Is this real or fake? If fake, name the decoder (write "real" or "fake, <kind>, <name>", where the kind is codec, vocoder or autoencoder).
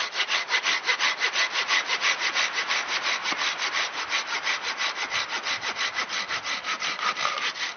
real